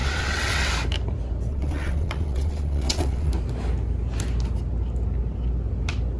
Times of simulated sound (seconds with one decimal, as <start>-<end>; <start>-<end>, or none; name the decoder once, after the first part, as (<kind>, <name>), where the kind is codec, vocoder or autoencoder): 0.0-0.7 (vocoder, WaveNeXt); 1.5-3.3